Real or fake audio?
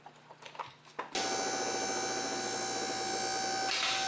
real